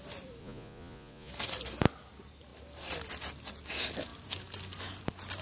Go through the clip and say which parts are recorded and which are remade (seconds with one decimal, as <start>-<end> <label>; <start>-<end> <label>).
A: 0.0-0.4 recorded; 0.4-1.3 remade; 1.3-5.4 recorded